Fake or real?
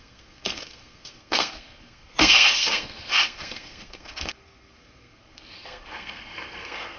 fake